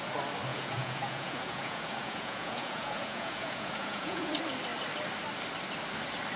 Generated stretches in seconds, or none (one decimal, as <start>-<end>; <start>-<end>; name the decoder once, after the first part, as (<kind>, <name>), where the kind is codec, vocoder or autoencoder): 0.5-4.3 (vocoder, Vocos)